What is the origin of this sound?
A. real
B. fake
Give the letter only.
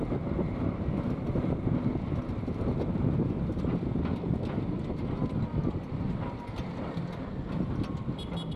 A